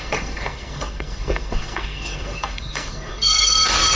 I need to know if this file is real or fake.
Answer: fake